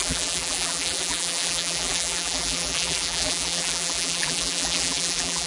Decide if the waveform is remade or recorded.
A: remade